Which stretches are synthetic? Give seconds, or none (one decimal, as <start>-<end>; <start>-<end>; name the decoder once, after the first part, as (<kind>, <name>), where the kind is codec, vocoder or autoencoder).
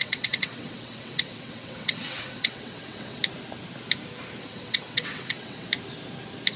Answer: 0.0-3.2 (vocoder, WaveNeXt); 4.4-5.7